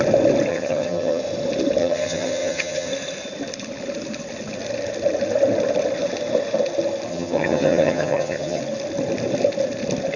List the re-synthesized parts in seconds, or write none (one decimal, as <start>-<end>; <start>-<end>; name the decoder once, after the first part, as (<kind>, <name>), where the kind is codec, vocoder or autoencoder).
0.5-1.2 (vocoder, HiFi-GAN); 1.8-2.9; 7.1-8.6